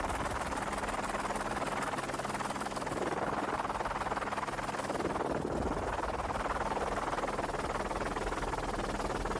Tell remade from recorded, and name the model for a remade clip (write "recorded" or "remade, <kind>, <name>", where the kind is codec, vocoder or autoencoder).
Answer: recorded